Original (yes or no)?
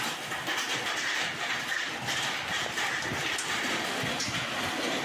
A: yes